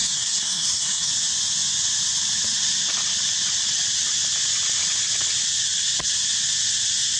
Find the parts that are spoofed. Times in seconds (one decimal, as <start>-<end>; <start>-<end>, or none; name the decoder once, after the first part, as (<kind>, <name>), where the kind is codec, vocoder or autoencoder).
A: 0.0-1.1 (codec, SNAC)